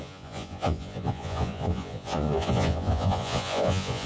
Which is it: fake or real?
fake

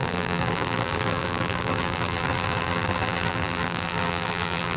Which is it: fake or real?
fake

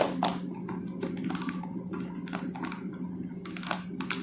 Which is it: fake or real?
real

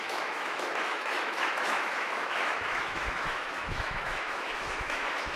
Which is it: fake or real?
fake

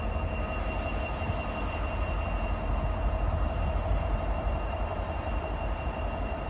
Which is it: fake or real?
real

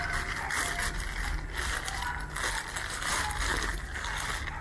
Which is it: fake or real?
real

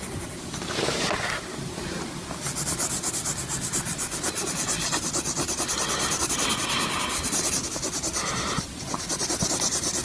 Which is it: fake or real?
real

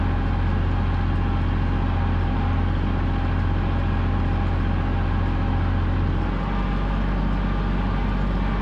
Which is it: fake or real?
real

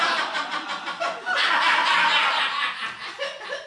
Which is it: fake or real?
real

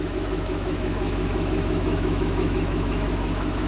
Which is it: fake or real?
fake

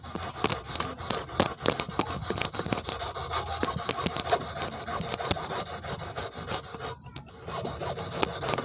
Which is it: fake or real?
real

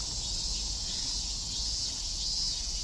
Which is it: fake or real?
real